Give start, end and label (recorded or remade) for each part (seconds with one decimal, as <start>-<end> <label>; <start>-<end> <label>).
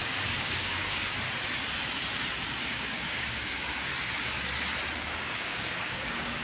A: 0.0-1.0 remade; 1.0-2.7 recorded; 2.7-3.9 remade; 3.9-5.0 recorded; 5.0-6.4 remade